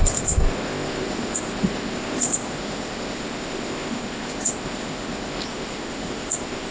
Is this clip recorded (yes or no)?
no